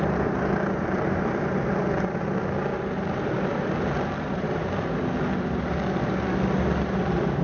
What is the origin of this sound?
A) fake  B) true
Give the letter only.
B